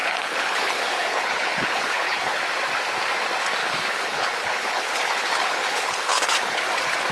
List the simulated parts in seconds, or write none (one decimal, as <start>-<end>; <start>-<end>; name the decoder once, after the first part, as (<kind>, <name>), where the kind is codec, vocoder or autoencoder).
0.0-2.4 (codec, HILCodec); 3.6-6.6